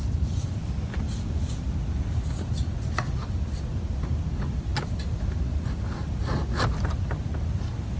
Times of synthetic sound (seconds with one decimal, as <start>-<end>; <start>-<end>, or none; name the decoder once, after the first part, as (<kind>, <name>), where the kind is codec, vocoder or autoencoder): none